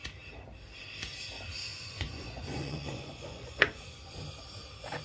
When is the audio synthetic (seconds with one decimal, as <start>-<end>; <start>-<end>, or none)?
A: 1.7-4.1